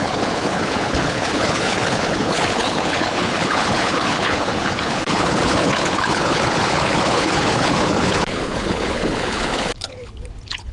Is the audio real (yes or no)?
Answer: no